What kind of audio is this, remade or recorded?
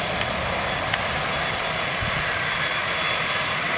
recorded